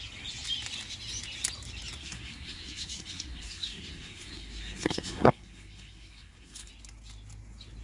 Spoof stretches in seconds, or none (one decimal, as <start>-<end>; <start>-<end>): 2.0-6.7